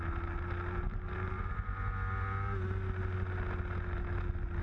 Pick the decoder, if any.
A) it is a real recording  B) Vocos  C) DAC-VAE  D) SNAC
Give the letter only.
A